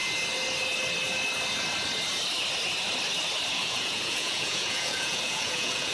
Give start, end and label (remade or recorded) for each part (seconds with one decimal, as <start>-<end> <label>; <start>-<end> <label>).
0.0-3.5 recorded; 3.5-5.9 remade